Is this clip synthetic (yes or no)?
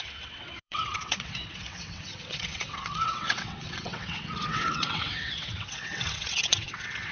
yes